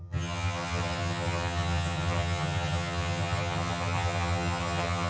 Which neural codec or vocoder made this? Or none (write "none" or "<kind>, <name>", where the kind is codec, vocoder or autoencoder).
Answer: vocoder, HiFi-GAN